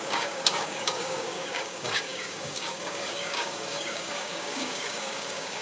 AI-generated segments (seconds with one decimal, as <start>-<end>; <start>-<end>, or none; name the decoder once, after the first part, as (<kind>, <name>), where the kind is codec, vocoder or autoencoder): 0.0-5.6 (codec, DAC)